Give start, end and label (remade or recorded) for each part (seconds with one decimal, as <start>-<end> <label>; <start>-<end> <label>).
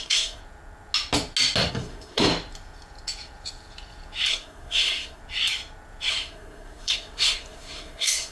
0.0-0.4 remade; 0.4-1.7 recorded; 1.7-2.3 remade; 2.3-4.3 recorded; 4.3-5.2 remade; 5.2-6.1 recorded; 6.1-8.3 remade